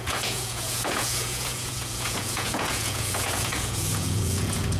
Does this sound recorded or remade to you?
remade